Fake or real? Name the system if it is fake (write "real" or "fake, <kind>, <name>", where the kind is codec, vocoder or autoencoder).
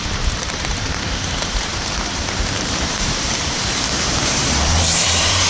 fake, vocoder, BigVGAN v2